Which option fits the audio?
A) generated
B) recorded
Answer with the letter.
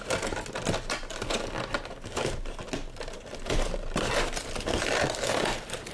B